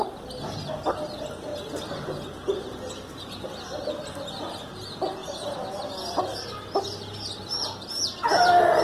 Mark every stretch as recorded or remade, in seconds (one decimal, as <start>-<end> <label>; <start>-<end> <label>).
0.0-5.2 recorded; 5.2-6.2 remade; 6.2-8.8 recorded